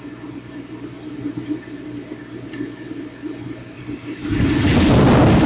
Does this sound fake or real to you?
real